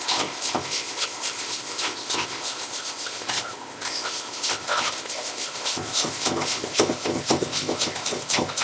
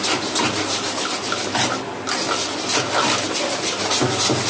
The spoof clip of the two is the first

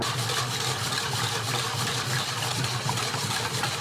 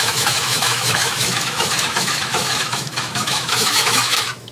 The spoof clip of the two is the second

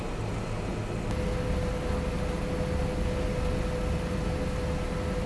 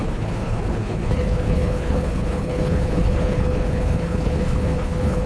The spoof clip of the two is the second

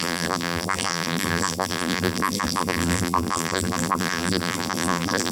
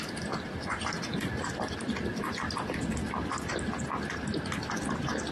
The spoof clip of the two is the first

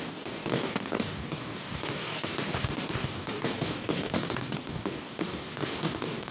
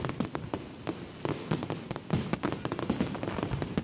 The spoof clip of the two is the first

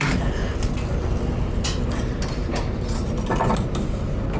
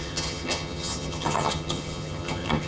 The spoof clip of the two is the second